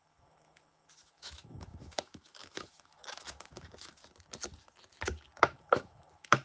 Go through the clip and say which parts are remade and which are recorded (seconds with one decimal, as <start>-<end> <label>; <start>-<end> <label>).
0.0-4.0 remade; 4.0-5.4 recorded; 5.4-6.4 remade